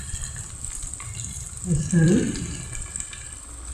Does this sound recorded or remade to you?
remade